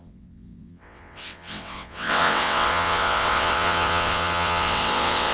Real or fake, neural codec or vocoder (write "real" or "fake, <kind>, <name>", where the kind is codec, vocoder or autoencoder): fake, vocoder, WaveNeXt